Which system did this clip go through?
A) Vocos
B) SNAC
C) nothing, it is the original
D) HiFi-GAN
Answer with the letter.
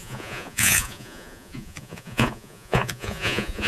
A